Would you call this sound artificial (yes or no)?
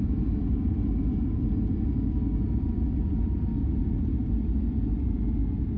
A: no